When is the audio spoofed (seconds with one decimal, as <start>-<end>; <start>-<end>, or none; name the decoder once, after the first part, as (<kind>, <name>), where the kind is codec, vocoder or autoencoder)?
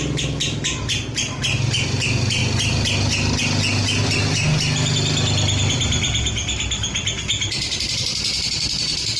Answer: none